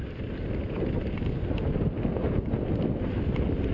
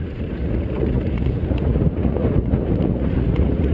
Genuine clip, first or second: first